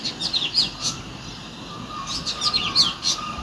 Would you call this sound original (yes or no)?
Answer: yes